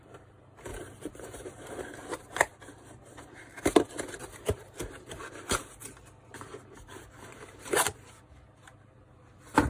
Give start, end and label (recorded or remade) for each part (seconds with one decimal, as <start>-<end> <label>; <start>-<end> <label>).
0.0-3.5 remade; 3.5-4.4 recorded; 4.4-6.5 remade; 6.5-7.7 recorded; 7.7-9.7 remade